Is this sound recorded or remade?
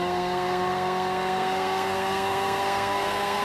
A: remade